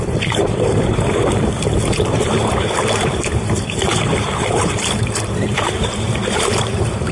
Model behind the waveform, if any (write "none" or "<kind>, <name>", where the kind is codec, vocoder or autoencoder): vocoder, BigVGAN v2